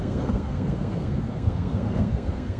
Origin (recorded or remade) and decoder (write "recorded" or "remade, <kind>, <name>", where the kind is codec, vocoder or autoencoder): remade, codec, SNAC